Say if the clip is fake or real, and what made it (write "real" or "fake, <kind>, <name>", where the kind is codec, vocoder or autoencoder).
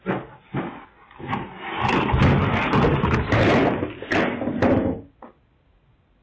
real